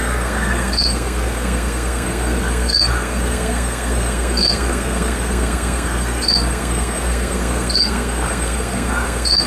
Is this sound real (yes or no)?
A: no